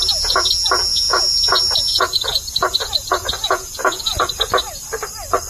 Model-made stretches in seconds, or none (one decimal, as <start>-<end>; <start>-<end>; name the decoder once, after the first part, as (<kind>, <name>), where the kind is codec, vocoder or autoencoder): 0.9-4.2 (vocoder, Vocos)